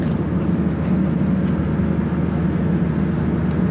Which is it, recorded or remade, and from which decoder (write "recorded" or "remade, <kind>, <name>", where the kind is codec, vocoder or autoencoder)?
recorded